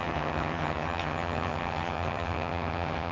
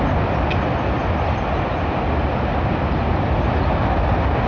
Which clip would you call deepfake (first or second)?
first